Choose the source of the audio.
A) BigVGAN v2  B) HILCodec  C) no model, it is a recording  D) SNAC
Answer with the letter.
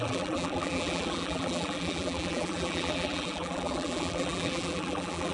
A